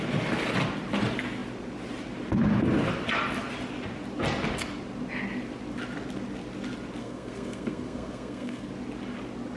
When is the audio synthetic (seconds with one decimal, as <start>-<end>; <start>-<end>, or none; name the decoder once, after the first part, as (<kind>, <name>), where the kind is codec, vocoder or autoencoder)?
7.0-8.7 (codec, SNAC)